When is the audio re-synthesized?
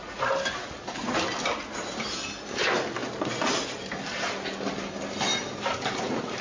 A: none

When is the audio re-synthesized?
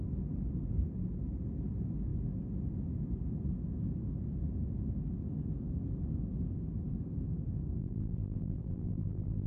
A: 7.8-9.5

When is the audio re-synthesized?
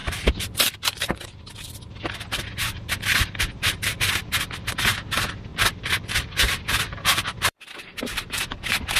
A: 0.0-4.1; 5.5-8.0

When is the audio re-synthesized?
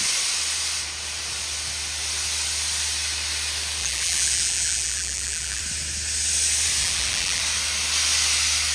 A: 3.8-5.6; 6.8-7.4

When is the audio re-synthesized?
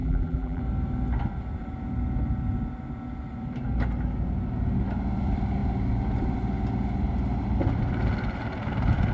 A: 0.0-0.6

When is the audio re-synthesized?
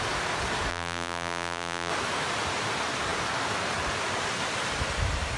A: 0.7-1.9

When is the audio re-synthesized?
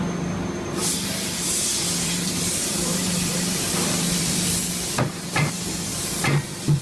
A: 0.8-4.9; 5.9-6.8